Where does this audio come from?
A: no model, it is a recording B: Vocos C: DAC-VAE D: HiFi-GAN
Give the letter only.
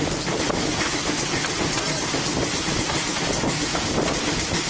A